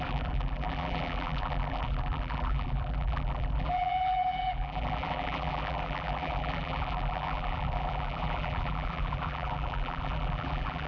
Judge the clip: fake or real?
fake